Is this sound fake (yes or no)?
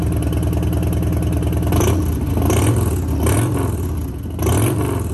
no